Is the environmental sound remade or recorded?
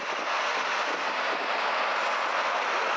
recorded